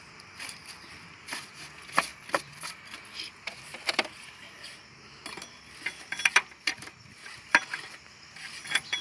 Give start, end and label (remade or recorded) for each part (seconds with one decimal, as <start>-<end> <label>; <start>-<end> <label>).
0.0-5.2 remade; 5.2-6.3 recorded; 6.3-9.0 remade